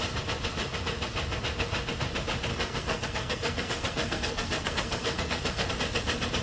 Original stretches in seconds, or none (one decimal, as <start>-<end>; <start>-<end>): 0.0-2.5; 5.7-6.4